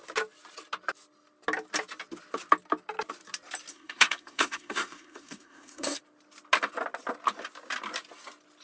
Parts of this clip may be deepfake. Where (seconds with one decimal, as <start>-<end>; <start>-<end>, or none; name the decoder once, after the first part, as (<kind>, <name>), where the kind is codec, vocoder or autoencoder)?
3.7-6.0 (codec, SNAC)